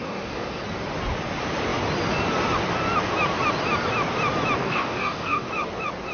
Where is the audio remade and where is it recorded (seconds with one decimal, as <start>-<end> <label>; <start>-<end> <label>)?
0.0-0.6 remade; 0.6-4.6 recorded; 4.6-5.5 remade; 5.5-6.1 recorded